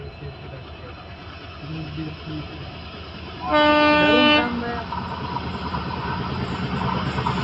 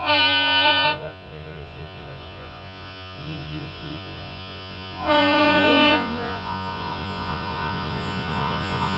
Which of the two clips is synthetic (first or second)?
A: second